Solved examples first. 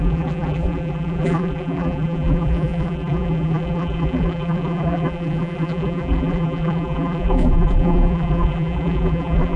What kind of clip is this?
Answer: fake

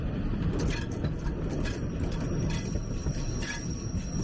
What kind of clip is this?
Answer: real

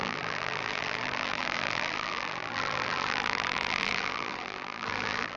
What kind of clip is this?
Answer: fake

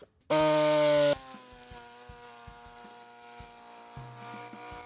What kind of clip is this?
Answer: real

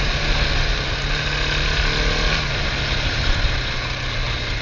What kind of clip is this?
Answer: real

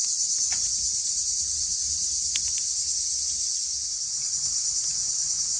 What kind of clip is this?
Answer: real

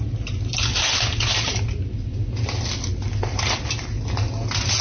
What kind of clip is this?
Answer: real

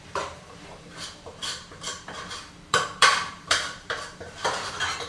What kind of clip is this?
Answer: fake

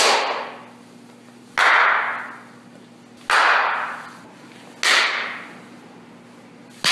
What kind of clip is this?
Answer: real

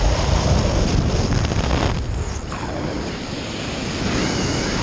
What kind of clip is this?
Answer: real